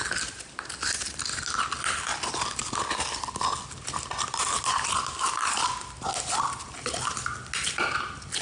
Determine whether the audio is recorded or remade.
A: recorded